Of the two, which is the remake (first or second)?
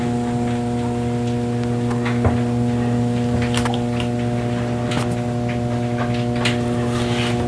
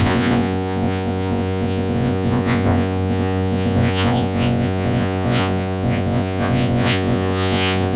second